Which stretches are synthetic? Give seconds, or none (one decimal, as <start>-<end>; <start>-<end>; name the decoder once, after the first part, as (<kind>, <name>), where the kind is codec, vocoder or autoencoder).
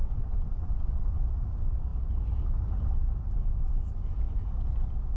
0.0-1.2 (vocoder, WaveNeXt)